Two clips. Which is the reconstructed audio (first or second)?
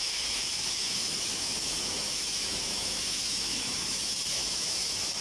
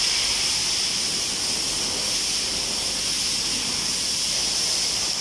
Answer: first